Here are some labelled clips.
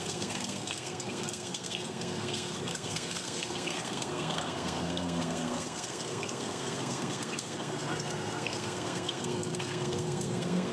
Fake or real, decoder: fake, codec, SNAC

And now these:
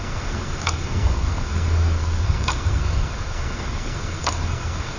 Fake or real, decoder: fake, codec, SNAC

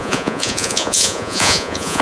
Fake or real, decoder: fake, vocoder, Vocos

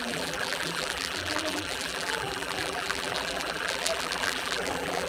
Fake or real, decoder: fake, vocoder, BigVGAN v2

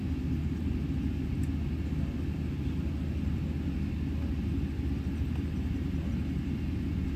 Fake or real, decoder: real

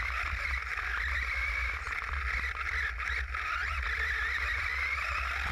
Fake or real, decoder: real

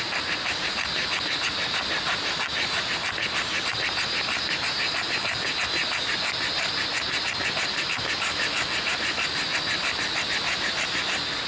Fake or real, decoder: real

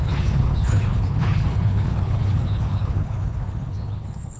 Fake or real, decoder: fake, codec, HILCodec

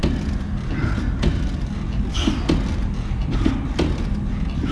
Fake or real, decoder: real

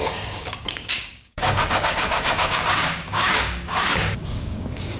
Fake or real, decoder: fake, codec, DAC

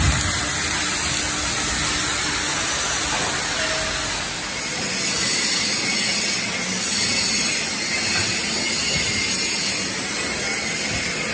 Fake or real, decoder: real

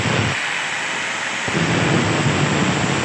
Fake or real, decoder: real